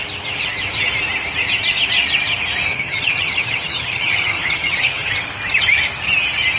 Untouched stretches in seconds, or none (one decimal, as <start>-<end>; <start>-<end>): 0.0-2.7; 5.1-6.6